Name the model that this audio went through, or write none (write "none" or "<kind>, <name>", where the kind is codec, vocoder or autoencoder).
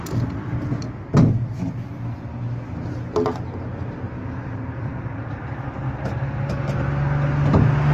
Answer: none